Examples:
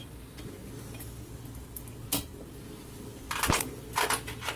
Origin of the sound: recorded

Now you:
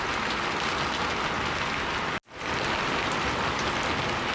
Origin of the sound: recorded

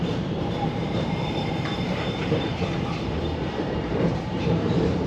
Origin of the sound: remade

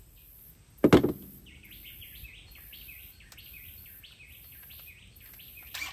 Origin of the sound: recorded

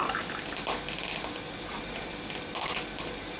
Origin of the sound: recorded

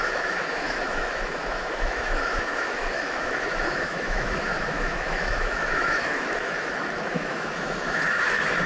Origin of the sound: remade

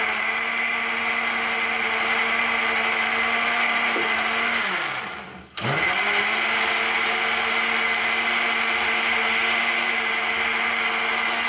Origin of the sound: recorded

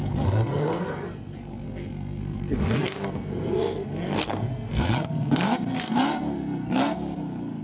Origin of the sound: remade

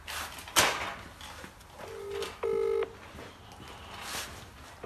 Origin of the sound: recorded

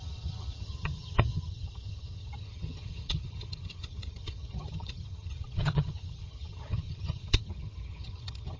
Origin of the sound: remade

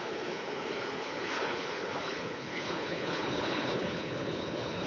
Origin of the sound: remade